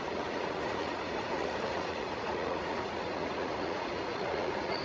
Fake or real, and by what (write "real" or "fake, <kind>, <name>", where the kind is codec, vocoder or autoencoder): fake, vocoder, Vocos